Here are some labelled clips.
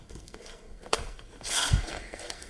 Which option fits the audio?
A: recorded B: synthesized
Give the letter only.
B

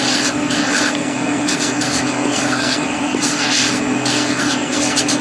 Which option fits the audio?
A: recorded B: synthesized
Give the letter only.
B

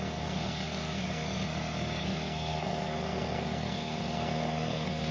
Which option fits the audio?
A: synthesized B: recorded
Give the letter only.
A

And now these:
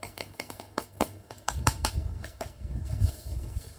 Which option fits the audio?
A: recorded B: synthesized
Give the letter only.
B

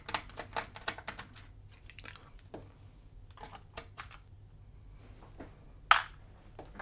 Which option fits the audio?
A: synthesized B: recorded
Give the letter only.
B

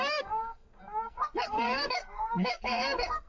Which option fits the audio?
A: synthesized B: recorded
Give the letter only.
A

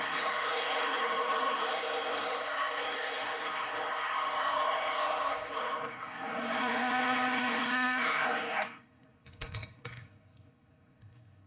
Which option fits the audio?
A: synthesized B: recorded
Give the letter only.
A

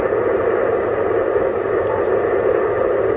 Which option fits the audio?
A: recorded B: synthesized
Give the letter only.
A